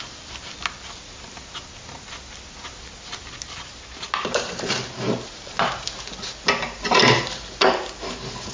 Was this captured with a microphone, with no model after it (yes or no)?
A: yes